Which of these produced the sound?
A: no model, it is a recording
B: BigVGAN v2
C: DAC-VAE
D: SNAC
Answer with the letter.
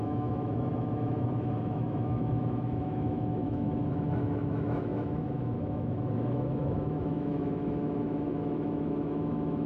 C